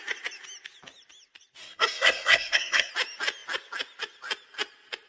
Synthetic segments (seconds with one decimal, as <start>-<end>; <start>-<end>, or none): 1.6-2.9